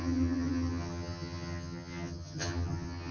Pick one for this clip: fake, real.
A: fake